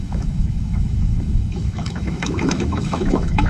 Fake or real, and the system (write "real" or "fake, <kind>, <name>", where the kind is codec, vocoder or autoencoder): fake, autoencoder, DAC-VAE